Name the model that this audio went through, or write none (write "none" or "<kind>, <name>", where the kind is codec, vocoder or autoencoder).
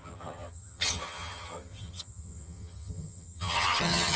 vocoder, HiFi-GAN